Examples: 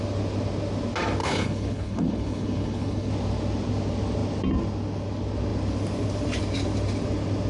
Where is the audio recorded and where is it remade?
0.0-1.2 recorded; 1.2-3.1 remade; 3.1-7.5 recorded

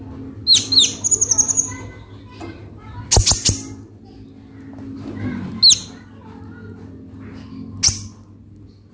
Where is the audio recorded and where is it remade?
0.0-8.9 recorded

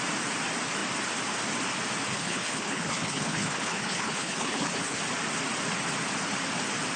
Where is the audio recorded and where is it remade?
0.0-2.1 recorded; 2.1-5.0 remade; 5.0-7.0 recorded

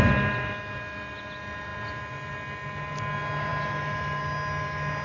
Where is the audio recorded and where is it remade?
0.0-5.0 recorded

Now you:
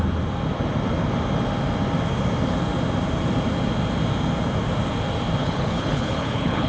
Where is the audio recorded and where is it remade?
0.0-5.4 recorded; 5.4-6.7 remade

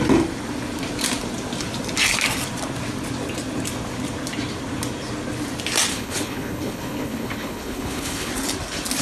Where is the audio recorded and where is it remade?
0.0-5.9 recorded; 5.9-8.3 remade; 8.3-9.0 recorded